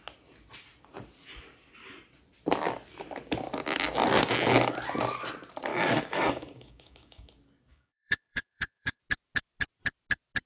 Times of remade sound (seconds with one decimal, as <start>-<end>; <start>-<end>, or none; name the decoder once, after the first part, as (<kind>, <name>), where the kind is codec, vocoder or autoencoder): 5.7-7.3 (codec, DAC); 7.7-9.0